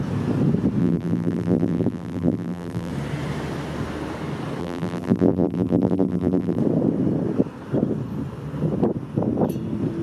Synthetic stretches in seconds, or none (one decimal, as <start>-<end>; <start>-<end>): 0.8-2.9; 4.6-6.6